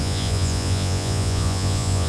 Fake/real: fake